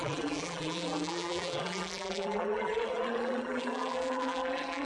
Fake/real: fake